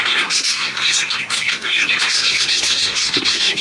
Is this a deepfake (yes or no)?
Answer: yes